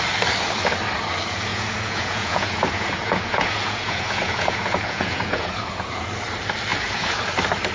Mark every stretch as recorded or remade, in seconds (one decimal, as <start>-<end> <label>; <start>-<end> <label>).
0.0-1.5 recorded; 1.5-6.1 remade; 6.1-6.7 recorded; 6.7-7.2 remade; 7.2-7.7 recorded